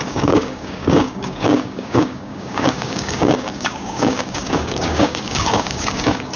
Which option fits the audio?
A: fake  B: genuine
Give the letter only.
A